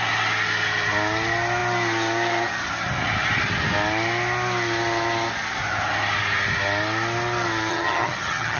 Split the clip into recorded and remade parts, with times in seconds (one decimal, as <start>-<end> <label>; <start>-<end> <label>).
0.0-7.7 recorded; 7.7-8.6 remade